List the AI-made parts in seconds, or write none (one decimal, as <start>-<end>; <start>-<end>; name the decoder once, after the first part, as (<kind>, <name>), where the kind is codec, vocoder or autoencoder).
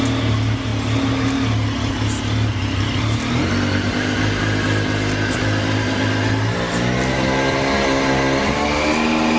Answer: none